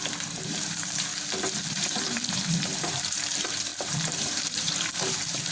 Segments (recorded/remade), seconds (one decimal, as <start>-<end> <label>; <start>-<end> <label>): 0.0-1.1 remade; 1.1-1.7 recorded; 1.7-5.5 remade